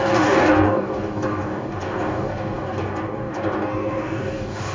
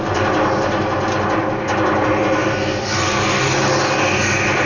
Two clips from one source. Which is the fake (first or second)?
first